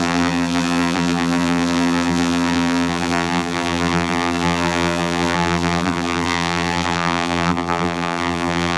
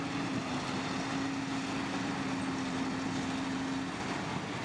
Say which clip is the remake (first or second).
first